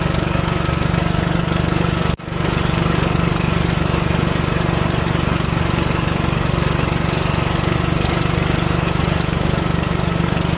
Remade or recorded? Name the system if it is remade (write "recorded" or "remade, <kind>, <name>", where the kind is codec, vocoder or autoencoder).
remade, codec, DAC